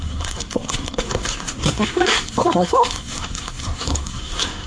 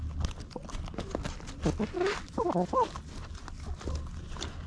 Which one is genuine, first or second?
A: second